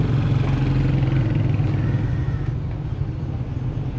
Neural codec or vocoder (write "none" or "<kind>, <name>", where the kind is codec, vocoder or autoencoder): none